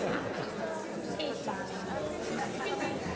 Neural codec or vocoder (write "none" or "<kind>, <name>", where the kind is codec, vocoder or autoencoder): none